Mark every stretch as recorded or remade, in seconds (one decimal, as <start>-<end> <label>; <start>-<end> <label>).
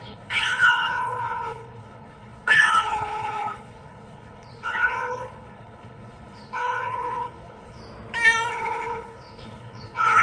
0.0-7.8 remade; 7.8-8.5 recorded; 8.5-10.2 remade